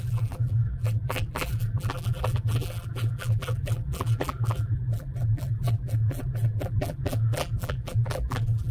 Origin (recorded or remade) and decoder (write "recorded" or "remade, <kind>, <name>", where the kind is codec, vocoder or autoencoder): remade, vocoder, BigVGAN v2